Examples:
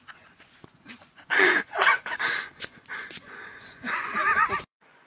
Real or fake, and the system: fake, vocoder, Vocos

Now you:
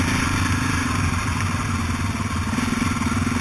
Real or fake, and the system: real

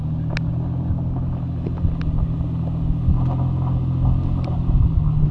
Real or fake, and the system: real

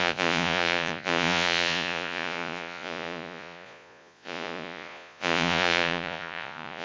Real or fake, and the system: fake, vocoder, Vocos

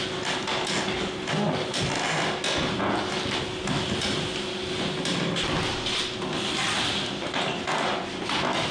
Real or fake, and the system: real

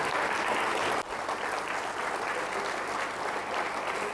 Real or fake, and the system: real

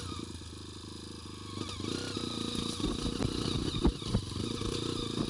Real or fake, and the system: real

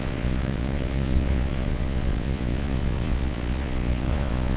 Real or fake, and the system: fake, vocoder, Vocos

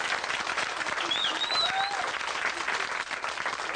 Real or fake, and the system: real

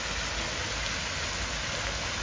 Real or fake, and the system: real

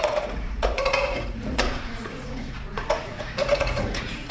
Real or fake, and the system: fake, vocoder, Vocos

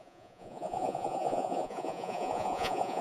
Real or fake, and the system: fake, vocoder, Vocos